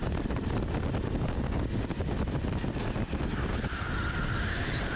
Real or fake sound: real